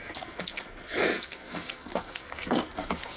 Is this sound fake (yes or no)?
yes